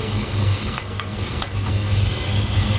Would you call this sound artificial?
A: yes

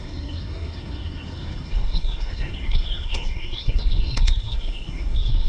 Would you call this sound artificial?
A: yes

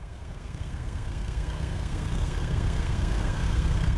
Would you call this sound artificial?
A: yes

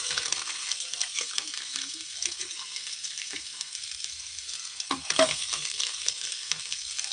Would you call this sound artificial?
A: yes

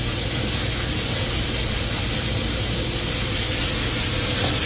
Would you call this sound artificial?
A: no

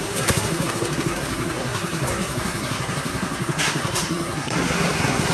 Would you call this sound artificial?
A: yes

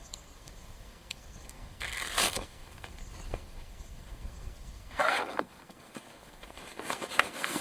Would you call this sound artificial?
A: yes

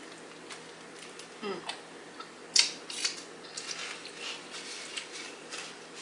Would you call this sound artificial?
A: no